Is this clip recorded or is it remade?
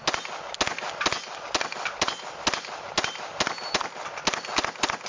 recorded